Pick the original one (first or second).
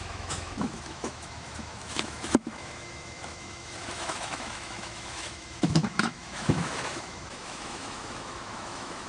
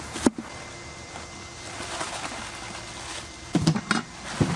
second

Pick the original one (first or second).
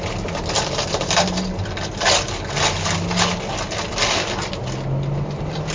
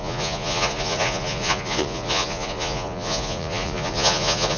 first